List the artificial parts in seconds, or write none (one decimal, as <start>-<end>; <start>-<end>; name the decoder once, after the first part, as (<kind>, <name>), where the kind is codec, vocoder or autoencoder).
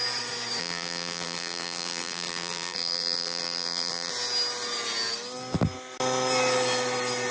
0.6-4.1 (vocoder, BigVGAN v2)